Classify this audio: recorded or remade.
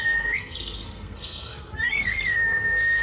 remade